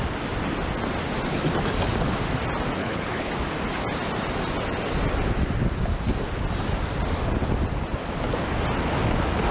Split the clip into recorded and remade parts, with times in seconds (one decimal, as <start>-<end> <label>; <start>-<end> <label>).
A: 0.0-2.8 recorded; 2.8-3.3 remade; 3.3-9.5 recorded